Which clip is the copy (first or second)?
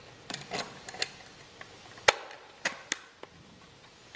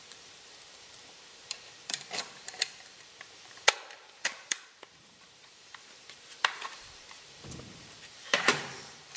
second